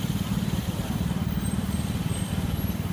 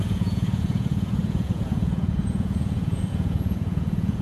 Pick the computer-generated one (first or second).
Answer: second